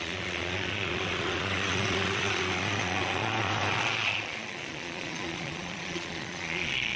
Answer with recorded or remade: remade